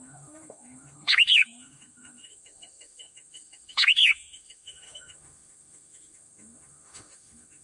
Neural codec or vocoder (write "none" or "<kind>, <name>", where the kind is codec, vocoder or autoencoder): autoencoder, DAC-VAE